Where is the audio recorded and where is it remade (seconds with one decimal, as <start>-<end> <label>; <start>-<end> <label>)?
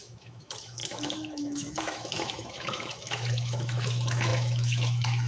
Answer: 0.0-5.3 remade